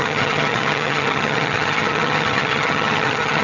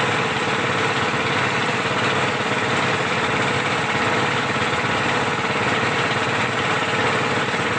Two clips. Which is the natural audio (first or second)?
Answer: second